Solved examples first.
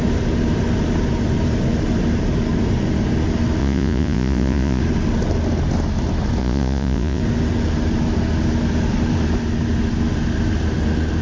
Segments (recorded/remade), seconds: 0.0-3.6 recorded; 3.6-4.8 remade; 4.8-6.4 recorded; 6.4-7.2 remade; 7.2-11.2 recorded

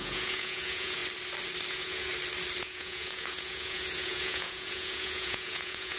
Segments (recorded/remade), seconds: 0.0-1.0 remade; 1.0-1.7 recorded; 1.7-2.1 remade; 2.1-2.6 recorded; 2.6-6.0 remade

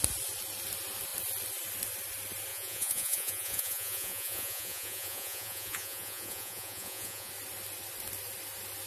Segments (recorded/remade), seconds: 0.0-2.5 recorded; 2.5-7.3 remade; 7.3-8.9 recorded

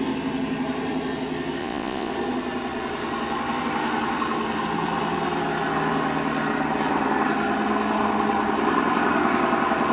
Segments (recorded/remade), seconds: 0.0-1.6 recorded; 1.6-2.1 remade; 2.1-9.9 recorded

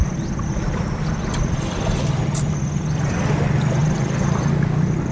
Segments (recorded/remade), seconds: 0.0-5.1 recorded

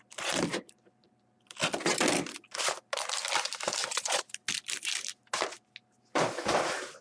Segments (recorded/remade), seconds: 0.0-3.8 recorded; 3.8-4.3 remade; 4.3-7.0 recorded